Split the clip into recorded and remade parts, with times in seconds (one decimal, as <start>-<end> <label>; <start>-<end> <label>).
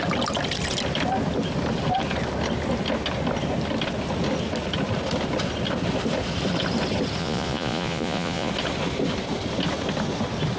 0.0-7.2 recorded; 7.2-8.5 remade; 8.5-10.6 recorded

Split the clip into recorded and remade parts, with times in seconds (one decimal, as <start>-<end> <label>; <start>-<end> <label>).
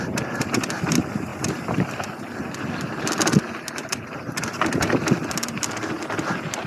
0.0-6.7 recorded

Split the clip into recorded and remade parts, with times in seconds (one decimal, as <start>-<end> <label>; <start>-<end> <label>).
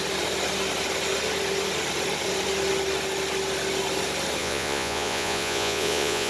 0.0-4.4 recorded; 4.4-6.3 remade